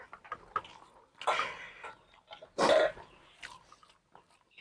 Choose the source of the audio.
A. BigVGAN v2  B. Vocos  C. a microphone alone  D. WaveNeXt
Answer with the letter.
C